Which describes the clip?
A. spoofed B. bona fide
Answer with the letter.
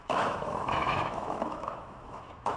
A